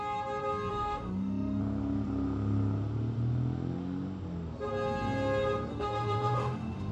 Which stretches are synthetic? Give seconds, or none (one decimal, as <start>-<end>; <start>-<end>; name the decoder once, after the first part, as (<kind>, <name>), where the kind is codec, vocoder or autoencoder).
0.7-1.6 (autoencoder, DAC-VAE); 5.7-6.9